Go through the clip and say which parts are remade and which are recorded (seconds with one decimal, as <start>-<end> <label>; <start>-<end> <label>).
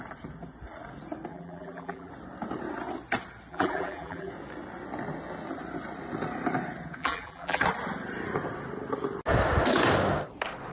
0.0-1.3 recorded; 1.3-2.1 remade; 2.1-3.5 recorded; 3.5-4.3 remade; 4.3-7.0 recorded; 7.0-7.6 remade; 7.6-10.7 recorded